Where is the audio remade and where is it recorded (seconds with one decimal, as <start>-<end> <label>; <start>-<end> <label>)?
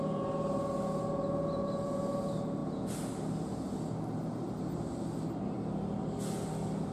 0.0-6.9 recorded